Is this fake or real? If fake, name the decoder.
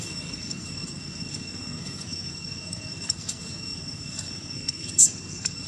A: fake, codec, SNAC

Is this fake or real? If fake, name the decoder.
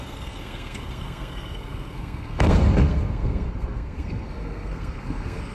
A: fake, codec, SNAC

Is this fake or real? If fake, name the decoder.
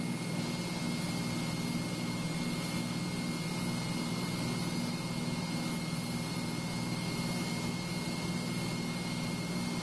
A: real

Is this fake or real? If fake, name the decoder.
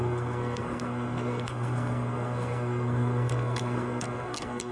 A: fake, codec, SNAC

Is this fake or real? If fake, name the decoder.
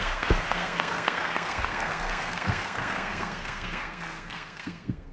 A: fake, codec, SNAC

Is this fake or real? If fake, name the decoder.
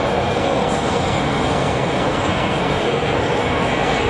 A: fake, codec, SNAC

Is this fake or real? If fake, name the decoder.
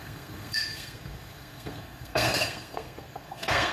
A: fake, codec, SNAC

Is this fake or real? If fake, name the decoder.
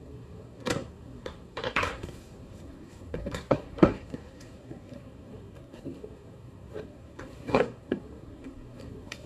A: fake, codec, SNAC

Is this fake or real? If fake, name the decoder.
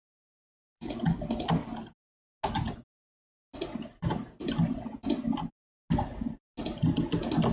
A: real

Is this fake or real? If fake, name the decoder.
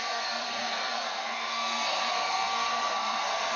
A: fake, codec, SNAC